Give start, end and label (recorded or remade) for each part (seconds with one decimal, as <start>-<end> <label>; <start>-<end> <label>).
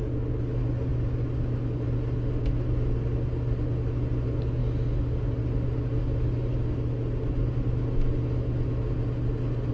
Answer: 0.0-9.7 recorded